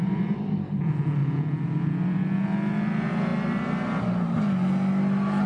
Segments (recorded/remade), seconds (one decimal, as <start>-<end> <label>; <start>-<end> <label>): 0.0-5.5 recorded